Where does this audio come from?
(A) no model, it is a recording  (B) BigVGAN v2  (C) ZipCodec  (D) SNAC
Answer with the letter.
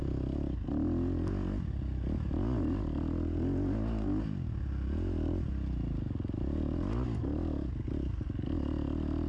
A